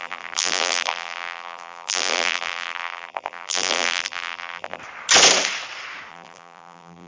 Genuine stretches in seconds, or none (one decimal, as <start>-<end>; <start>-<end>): 4.8-6.1